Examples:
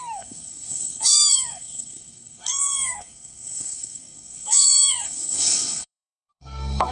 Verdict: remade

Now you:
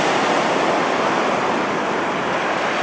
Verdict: recorded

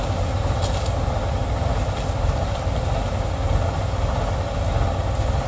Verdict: recorded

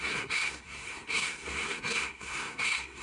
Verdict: remade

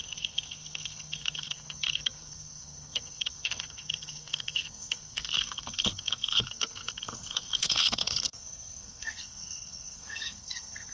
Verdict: remade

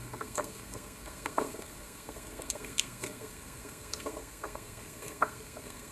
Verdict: remade